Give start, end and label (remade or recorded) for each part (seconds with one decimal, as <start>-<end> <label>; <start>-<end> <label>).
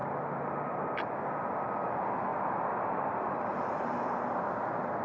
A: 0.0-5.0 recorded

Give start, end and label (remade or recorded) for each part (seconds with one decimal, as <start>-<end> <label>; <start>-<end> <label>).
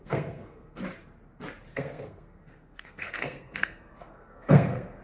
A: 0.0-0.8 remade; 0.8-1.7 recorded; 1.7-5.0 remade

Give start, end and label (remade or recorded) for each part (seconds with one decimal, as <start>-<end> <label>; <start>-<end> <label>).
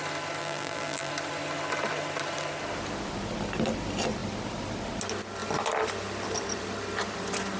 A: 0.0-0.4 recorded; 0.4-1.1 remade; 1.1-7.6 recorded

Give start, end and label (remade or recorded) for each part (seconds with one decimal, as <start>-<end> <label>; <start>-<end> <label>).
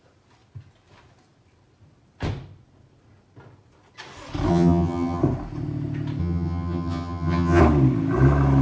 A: 0.0-4.5 recorded; 4.5-5.2 remade; 5.2-6.2 recorded; 6.2-7.6 remade; 7.6-8.6 recorded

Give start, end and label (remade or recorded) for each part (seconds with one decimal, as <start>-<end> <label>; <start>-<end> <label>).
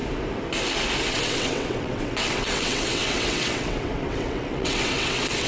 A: 0.0-1.1 recorded; 1.1-5.5 remade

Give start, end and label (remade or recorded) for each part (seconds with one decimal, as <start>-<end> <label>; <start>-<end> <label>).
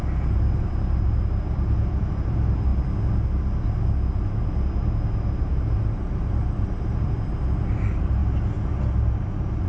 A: 0.0-2.7 remade; 2.7-4.2 recorded; 4.2-8.2 remade; 8.2-9.0 recorded; 9.0-9.7 remade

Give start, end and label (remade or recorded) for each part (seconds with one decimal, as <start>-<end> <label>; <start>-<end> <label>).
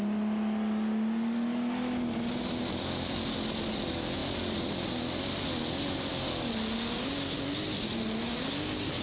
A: 0.0-9.0 recorded